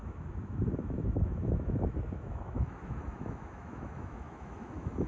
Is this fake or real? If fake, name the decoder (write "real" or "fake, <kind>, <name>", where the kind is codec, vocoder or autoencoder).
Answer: fake, autoencoder, DAC-VAE